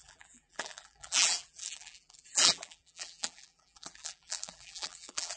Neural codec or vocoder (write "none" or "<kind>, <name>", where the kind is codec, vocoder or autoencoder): vocoder, BigVGAN v2